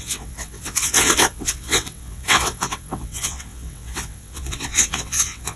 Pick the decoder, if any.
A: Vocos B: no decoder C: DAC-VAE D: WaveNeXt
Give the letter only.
D